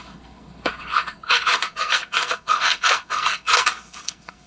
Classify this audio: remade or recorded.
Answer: remade